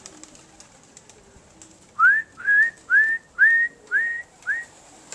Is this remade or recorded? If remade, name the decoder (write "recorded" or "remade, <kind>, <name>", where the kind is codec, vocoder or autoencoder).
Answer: recorded